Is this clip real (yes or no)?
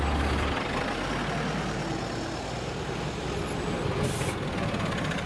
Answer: yes